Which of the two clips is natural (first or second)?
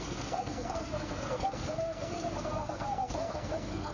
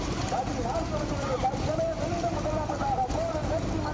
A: second